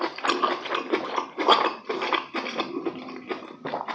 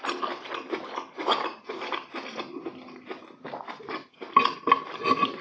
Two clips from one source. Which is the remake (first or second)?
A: first